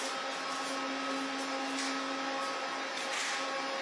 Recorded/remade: recorded